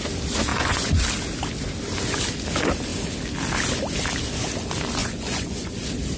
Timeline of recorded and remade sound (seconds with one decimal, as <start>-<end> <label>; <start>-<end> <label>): 0.0-0.5 recorded; 0.5-1.0 remade; 1.0-5.0 recorded; 5.0-5.7 remade; 5.7-6.2 recorded